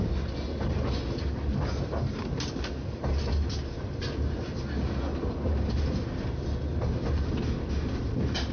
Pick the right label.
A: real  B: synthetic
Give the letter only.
A